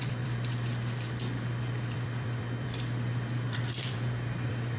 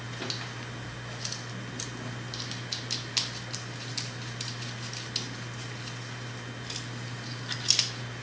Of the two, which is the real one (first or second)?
second